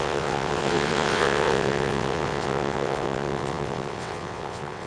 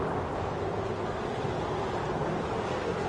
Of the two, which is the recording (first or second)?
second